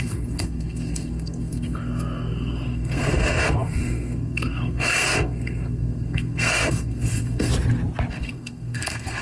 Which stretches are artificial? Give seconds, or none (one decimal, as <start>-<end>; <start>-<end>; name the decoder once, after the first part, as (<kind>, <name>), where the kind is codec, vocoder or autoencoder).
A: 0.0-7.5 (codec, SNAC); 8.1-9.2